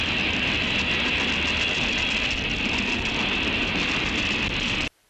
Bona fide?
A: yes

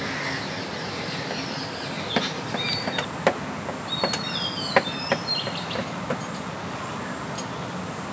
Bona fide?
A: yes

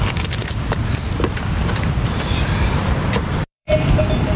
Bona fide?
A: no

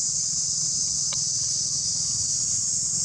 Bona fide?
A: yes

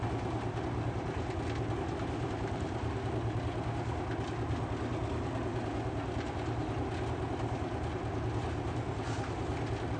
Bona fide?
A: yes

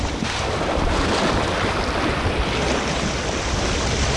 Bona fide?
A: yes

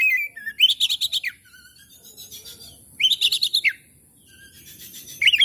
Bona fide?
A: yes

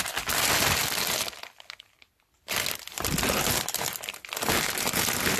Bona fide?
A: yes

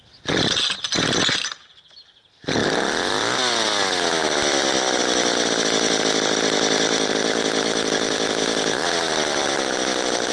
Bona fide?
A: yes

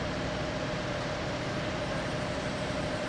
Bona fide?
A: no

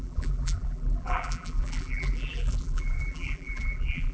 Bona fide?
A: no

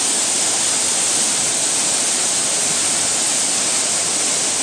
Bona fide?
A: yes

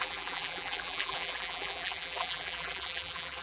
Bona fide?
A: no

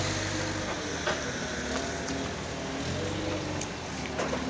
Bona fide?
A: yes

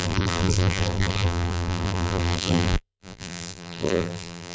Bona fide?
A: no